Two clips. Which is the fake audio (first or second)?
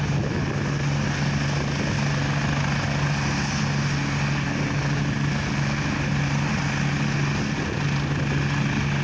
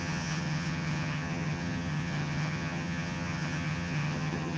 second